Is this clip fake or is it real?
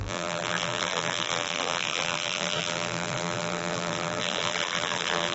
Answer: fake